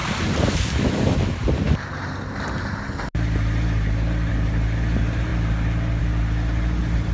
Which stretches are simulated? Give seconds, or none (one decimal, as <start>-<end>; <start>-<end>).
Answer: none